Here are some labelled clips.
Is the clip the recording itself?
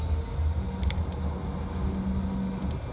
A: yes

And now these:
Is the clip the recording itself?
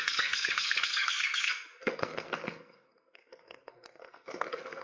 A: no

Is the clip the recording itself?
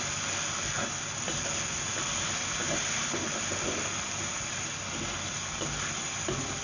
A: yes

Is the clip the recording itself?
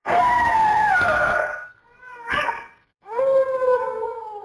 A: no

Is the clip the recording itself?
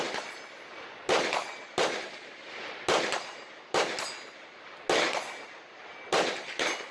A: yes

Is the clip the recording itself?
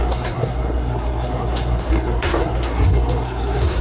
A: no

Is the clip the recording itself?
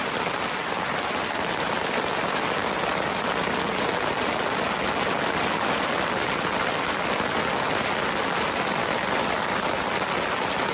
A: yes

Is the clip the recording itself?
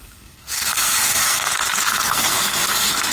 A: no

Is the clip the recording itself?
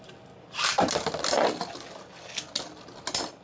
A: yes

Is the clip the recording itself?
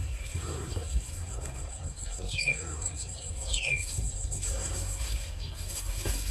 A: no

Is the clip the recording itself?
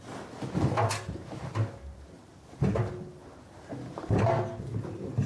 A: yes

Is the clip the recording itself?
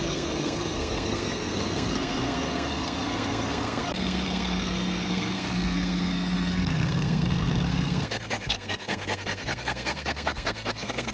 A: no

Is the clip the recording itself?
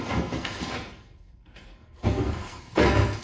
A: no